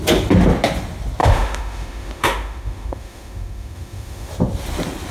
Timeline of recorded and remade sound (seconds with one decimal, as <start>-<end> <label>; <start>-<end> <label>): 0.0-1.2 recorded; 1.2-4.3 remade; 4.3-5.1 recorded